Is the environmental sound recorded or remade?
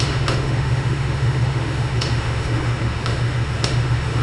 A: remade